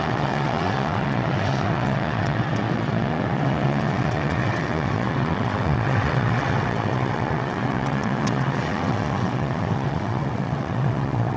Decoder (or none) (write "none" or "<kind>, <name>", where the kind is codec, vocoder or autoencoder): vocoder, WaveNeXt